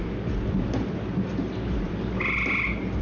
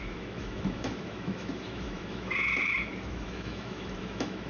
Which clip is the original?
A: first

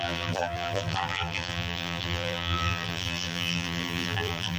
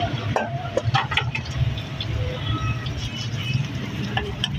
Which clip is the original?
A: second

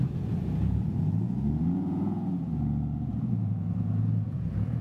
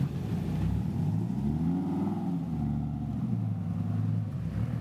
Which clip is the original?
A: second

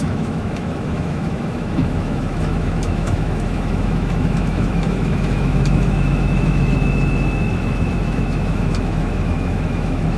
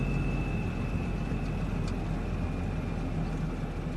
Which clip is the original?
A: second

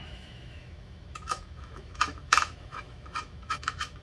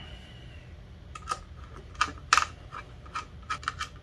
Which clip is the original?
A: second